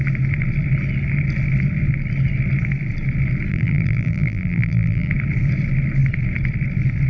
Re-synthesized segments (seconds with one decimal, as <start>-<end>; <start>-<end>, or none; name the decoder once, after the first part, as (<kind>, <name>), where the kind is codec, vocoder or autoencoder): 3.5-5.1 (vocoder, BigVGAN v2)